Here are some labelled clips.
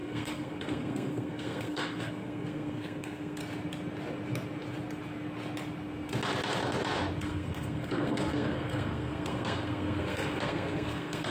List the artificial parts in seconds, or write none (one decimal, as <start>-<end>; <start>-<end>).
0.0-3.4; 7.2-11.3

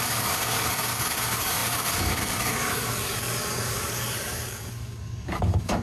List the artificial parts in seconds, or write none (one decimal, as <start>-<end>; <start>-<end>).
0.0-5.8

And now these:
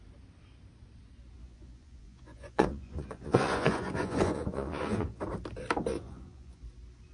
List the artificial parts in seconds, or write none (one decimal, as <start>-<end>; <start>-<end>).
1.4-5.2; 5.9-6.6